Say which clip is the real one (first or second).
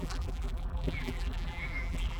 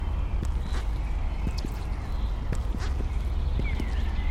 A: second